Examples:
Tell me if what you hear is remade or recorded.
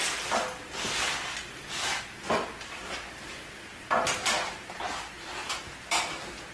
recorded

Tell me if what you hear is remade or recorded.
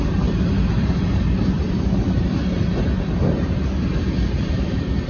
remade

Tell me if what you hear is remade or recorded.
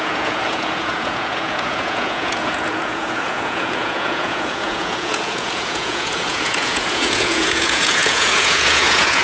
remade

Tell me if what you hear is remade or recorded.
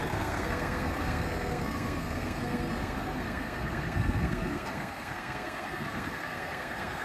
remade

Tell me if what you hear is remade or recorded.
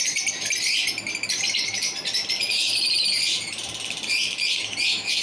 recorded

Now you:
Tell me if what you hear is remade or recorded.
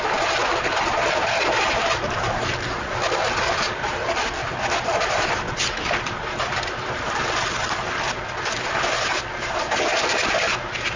remade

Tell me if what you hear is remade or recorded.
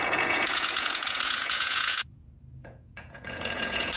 remade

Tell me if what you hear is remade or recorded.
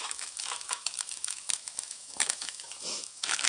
remade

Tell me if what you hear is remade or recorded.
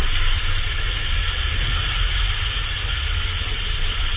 recorded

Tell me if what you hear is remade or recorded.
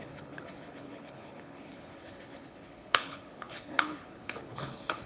remade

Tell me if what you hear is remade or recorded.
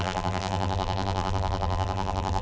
remade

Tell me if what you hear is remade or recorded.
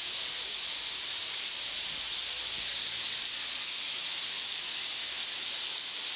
recorded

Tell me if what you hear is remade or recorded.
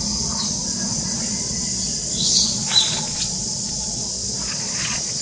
remade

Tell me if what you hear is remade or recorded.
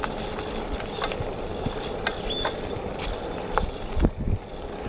recorded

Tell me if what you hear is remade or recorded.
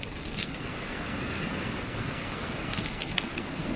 remade